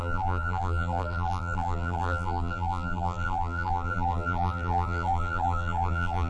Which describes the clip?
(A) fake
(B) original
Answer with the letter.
A